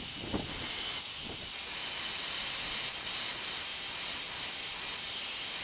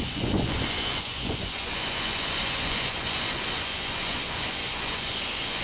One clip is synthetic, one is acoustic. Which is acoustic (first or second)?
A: first